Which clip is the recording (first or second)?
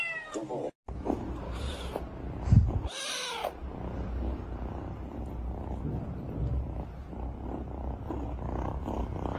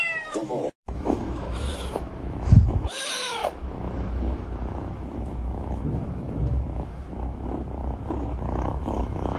first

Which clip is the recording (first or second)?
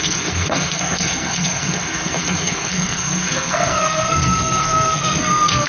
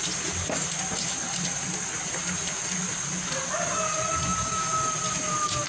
second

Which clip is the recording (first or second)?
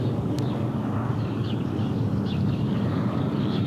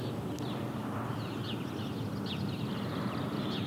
second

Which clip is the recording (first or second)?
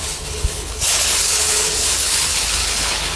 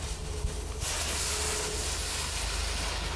second